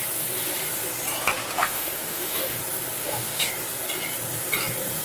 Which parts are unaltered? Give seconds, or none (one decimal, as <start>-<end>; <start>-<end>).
0.0-1.6; 2.6-3.0; 3.5-5.0